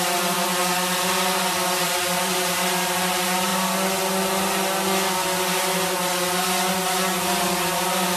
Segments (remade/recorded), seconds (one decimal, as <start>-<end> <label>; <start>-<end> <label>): 0.0-0.6 remade; 0.6-1.8 recorded; 1.8-3.5 remade; 3.5-7.4 recorded; 7.4-8.2 remade